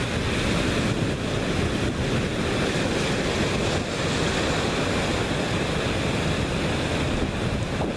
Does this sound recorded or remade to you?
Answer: recorded